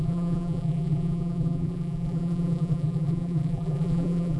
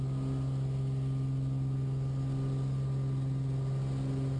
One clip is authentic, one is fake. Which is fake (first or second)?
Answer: first